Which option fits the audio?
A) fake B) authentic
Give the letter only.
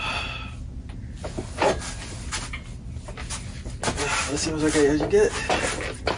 B